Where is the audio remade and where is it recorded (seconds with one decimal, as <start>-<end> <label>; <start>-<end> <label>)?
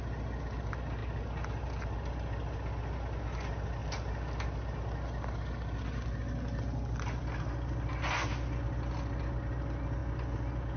0.0-10.8 recorded